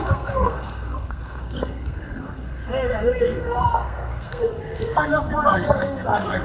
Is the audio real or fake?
fake